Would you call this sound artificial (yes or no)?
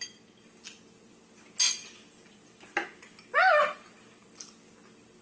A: no